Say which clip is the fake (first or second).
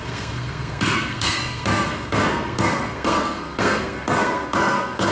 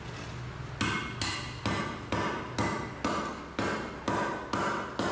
first